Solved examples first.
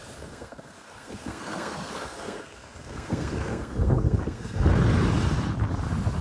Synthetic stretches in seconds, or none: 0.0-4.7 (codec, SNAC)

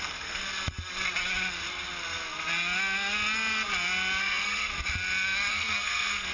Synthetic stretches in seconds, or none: 0.0-0.4 (codec, SNAC); 4.2-4.7; 5.5-6.3

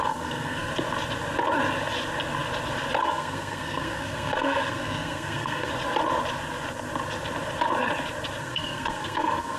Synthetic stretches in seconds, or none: 0.0-0.7 (codec, SNAC); 3.0-5.7; 8.4-9.6

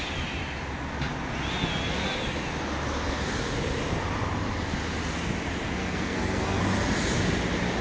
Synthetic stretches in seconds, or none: 5.8-6.6 (codec, SNAC)

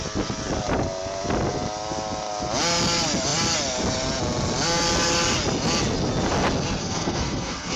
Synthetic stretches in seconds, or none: 6.8-7.8 (codec, SNAC)

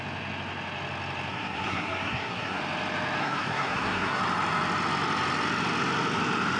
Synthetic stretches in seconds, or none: 1.3-2.6 (codec, SNAC); 3.2-4.2

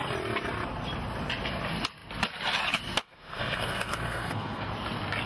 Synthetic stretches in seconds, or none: 3.0-4.7 (codec, SNAC)

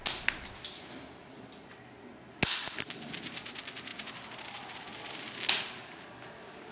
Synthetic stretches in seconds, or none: none